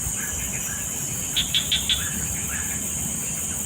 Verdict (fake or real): real